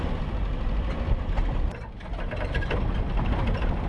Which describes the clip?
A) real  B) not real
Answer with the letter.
A